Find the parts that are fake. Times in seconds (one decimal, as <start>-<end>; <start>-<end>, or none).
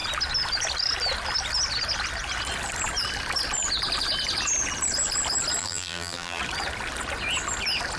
5.6-6.4